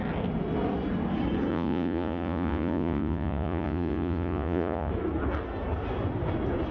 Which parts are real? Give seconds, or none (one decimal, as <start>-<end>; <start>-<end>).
0.0-1.5; 4.9-6.7